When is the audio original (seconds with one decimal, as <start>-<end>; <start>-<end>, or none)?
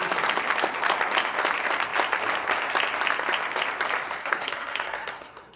0.0-4.2